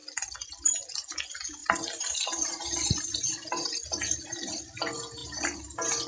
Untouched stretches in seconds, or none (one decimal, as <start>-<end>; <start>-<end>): 1.2-1.6; 3.5-5.2

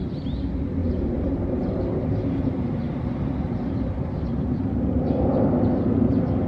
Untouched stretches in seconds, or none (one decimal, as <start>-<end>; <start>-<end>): 0.0-0.8; 4.6-6.5

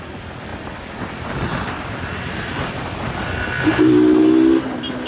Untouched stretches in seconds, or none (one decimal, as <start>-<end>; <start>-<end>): 0.0-5.1

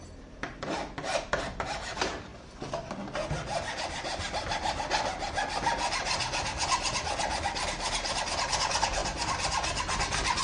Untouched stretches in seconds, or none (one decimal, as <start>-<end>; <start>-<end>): 0.0-10.4